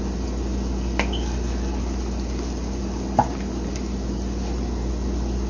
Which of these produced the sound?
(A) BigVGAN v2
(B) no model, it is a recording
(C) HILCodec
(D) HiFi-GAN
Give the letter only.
B